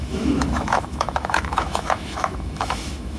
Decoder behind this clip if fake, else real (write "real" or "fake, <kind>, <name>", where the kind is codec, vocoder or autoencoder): fake, autoencoder, DAC-VAE